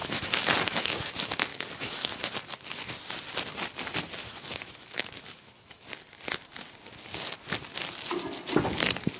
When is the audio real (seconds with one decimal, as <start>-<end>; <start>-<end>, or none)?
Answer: 1.1-1.5; 2.2-4.2; 5.8-9.2